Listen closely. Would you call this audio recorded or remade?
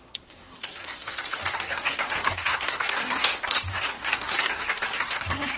remade